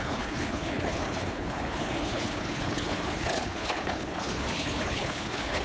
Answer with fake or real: fake